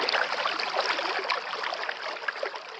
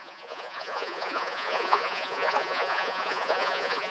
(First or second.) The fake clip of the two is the second